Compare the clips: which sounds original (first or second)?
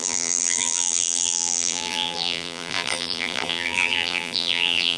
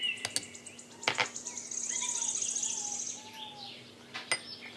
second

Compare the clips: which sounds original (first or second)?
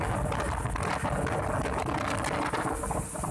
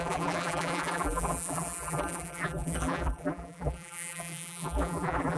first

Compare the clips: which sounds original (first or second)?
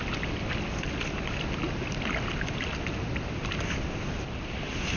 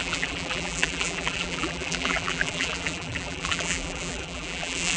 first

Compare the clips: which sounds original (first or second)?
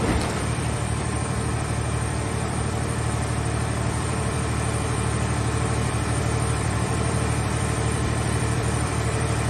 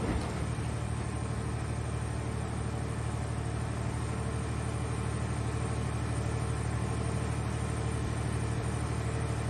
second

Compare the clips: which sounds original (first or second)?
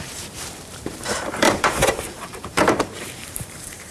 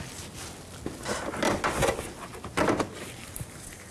second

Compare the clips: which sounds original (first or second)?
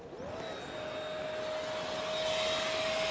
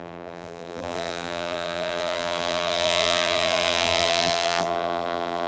first